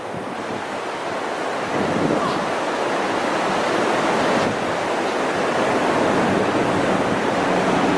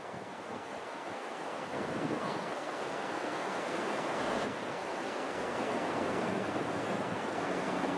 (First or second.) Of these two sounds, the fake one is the second